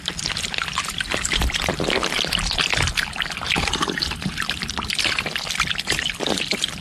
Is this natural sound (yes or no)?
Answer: yes